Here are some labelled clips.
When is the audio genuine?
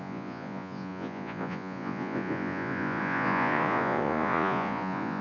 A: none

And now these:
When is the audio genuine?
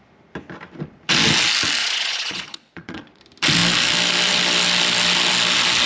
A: 0.0-1.8; 3.2-5.9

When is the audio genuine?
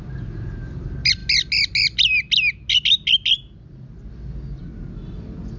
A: 0.0-5.6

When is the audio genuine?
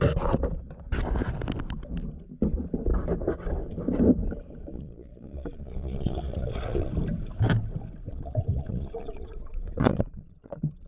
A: 0.0-4.7; 6.9-8.1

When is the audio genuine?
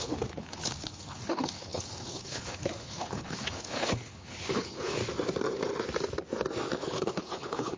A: 5.0-6.8